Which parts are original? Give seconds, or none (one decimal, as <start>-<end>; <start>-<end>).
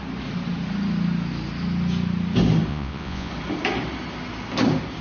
0.0-2.7; 3.3-5.0